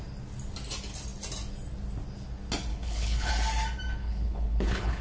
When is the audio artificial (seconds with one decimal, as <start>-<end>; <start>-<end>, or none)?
2.7-3.3; 4.0-5.0

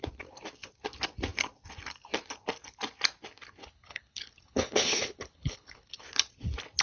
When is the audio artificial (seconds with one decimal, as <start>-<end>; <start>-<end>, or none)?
3.6-6.0

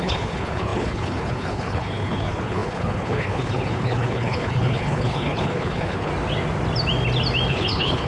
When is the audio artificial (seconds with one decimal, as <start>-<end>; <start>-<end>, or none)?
0.0-6.1; 7.5-8.1

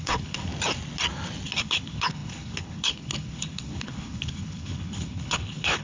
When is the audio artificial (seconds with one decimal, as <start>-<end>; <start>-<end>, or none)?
0.0-0.5; 1.6-5.8

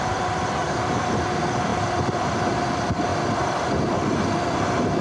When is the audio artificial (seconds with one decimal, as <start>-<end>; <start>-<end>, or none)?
none